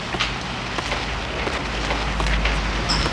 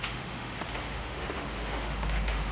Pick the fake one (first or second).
second